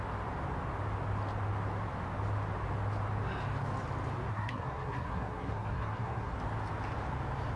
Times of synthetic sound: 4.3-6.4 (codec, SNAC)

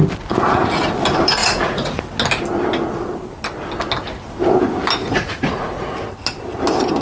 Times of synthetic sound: 1.4-2.0 (vocoder, Vocos); 5.0-5.9